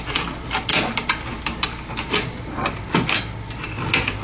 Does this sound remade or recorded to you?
recorded